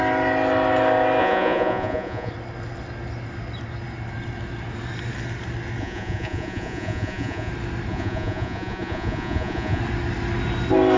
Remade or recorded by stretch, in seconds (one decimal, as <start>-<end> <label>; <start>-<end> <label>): 0.0-1.2 recorded; 1.2-2.3 remade; 2.3-5.8 recorded; 5.8-7.5 remade; 7.5-7.9 recorded; 7.9-9.8 remade; 9.8-11.0 recorded